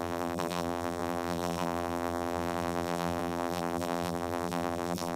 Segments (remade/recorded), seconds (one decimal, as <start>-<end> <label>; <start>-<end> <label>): 0.0-5.2 remade